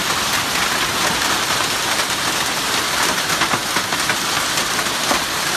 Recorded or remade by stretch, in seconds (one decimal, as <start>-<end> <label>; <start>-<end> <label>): 0.0-5.6 recorded